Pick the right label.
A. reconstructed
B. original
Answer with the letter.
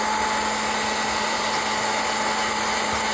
B